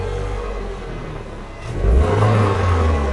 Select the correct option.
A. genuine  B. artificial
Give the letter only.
B